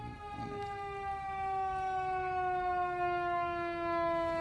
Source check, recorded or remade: recorded